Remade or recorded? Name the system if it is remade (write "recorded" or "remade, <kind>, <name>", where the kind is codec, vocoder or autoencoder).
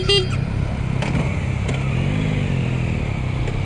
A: recorded